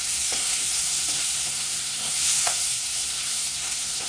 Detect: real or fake fake